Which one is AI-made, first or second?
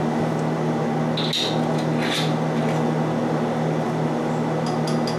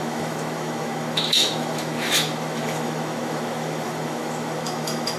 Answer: second